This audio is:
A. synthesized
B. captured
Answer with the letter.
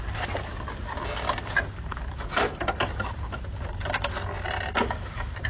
B